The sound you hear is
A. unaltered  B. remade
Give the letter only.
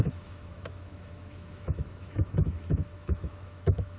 B